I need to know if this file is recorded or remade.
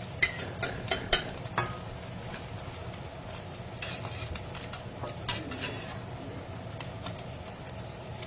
recorded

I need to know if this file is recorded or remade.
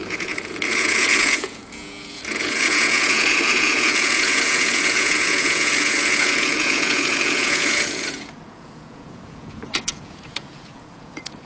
remade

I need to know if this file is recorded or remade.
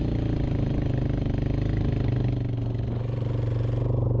recorded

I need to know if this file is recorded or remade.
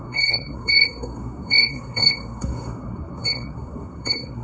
remade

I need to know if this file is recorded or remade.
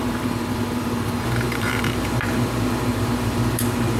remade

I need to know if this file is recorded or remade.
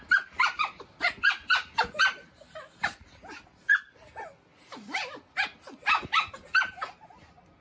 recorded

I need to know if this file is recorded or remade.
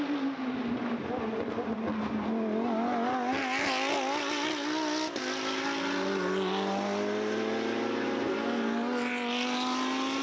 recorded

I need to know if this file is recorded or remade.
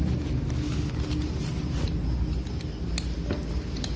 recorded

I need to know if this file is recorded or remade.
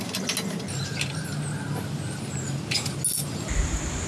recorded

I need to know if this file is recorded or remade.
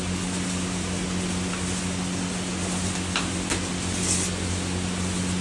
recorded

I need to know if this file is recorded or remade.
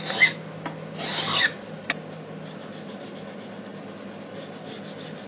recorded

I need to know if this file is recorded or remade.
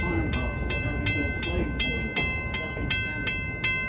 recorded